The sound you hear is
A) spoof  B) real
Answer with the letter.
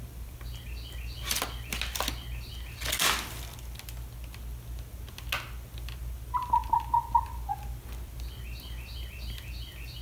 B